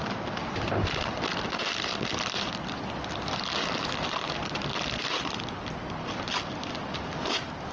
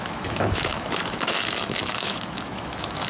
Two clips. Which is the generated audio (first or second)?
second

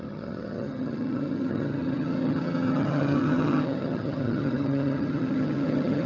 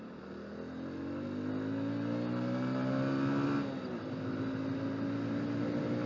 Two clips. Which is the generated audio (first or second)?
first